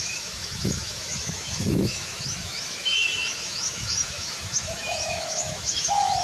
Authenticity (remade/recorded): remade